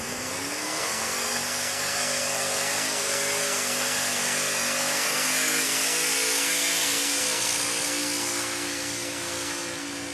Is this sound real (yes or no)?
no